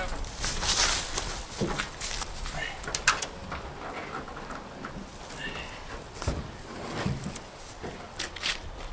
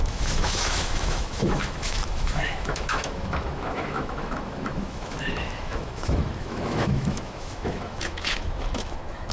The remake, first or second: second